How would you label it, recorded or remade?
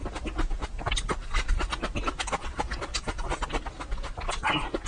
recorded